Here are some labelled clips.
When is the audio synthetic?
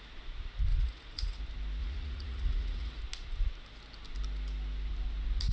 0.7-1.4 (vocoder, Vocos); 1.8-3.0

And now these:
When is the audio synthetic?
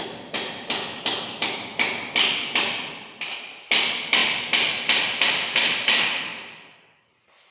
0.0-1.7 (vocoder, BigVGAN v2); 3.6-4.2; 5.0-6.3; 6.8-7.5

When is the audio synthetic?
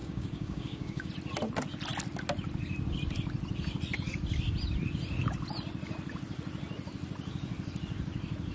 0.0-1.1 (codec, DAC)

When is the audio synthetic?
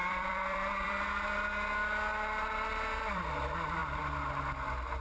0.0-0.9 (vocoder, BigVGAN v2); 2.1-3.2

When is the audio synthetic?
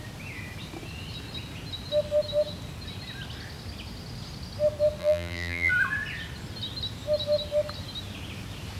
5.0-5.7 (vocoder, BigVGAN v2)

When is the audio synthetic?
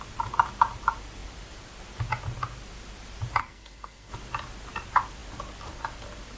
3.4-4.1 (codec, SNAC)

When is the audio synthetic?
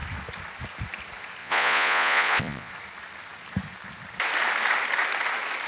1.4-2.7 (vocoder, Vocos)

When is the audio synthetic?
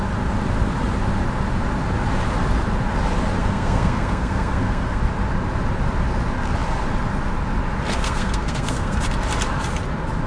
3.4-5.0 (codec, SNAC); 8.0-9.0